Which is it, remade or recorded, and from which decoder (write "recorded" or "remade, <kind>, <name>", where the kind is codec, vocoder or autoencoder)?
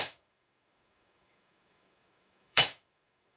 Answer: remade, autoencoder, DAC-VAE